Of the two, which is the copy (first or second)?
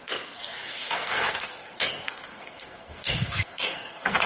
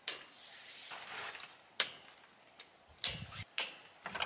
first